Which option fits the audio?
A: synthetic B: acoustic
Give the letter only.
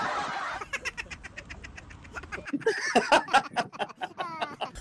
A